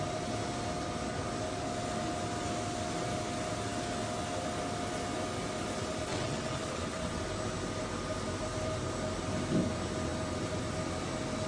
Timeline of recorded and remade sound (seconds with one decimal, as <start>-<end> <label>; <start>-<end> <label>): 0.0-6.1 recorded; 6.1-7.2 remade; 7.2-11.5 recorded